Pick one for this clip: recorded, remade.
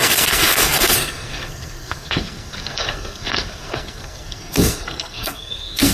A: remade